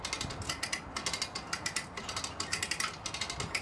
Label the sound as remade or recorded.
recorded